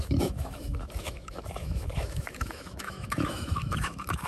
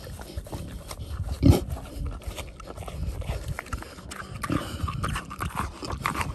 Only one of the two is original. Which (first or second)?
second